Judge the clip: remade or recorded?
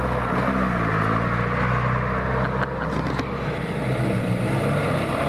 recorded